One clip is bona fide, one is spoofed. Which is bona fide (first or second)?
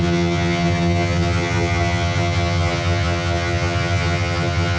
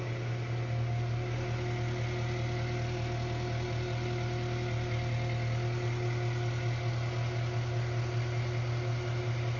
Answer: second